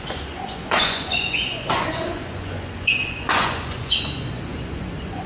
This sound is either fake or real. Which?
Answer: fake